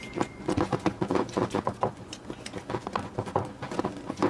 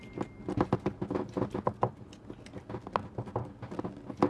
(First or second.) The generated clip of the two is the first